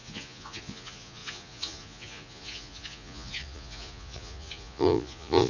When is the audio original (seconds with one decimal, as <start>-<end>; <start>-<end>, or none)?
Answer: none